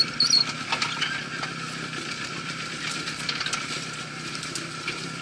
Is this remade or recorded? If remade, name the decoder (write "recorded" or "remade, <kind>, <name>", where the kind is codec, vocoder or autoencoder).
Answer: recorded